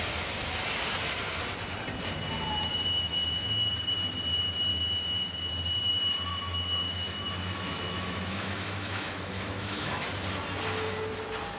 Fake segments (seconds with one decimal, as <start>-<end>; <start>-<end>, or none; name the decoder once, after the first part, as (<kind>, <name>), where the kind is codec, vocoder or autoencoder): 2.7-3.7 (autoencoder, DAC-VAE); 4.7-5.5; 6.3-10.1